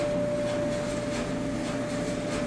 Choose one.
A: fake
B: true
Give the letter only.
B